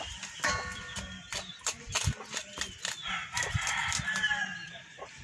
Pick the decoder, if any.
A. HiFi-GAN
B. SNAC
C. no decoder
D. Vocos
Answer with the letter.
C